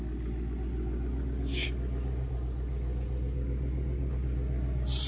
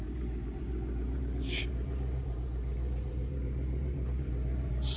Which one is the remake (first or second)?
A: second